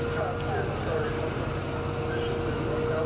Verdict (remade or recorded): recorded